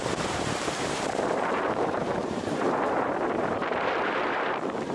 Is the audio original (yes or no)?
no